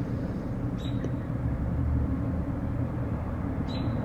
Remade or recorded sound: remade